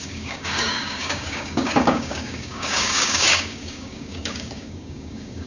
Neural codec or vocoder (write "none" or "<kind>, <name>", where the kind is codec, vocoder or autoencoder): codec, DAC